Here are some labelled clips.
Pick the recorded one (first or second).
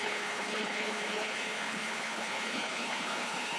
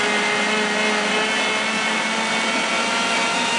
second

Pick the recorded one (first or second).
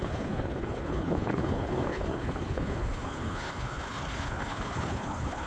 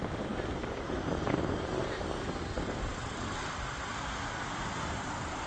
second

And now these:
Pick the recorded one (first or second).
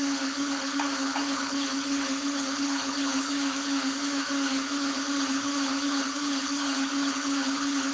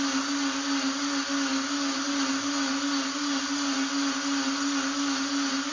second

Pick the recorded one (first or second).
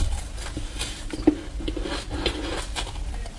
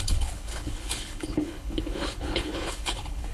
first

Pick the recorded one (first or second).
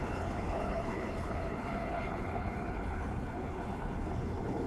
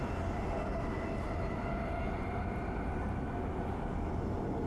second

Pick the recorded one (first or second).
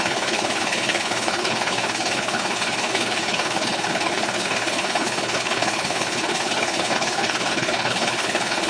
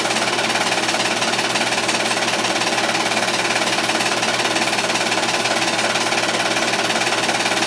second